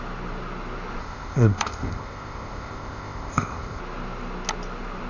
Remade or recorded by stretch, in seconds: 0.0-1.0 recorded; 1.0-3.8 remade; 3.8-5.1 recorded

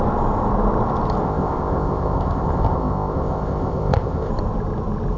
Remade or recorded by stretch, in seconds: 0.0-1.2 recorded; 1.2-4.3 remade; 4.3-5.2 recorded

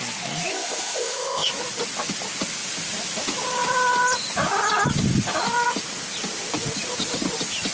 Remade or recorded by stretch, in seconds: 0.0-0.5 recorded; 0.5-1.5 remade; 1.5-7.7 recorded

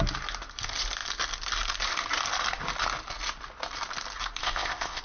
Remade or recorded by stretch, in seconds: 0.0-4.4 recorded; 4.4-5.0 remade

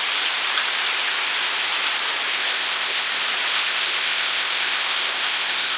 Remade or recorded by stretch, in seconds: 0.0-2.3 recorded; 2.3-3.1 remade; 3.1-3.5 recorded; 3.5-5.8 remade

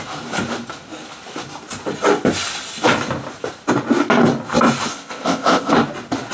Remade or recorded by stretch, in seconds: 0.0-4.9 recorded; 4.9-5.7 remade; 5.7-6.3 recorded

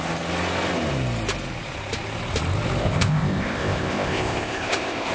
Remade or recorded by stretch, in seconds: 0.0-2.8 recorded; 2.8-5.1 remade